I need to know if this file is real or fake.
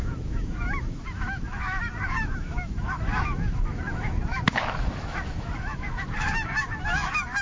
fake